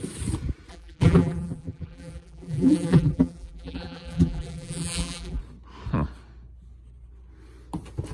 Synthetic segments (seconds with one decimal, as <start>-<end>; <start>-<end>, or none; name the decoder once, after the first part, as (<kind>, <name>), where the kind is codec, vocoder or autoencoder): 0.7-5.4 (vocoder, BigVGAN v2)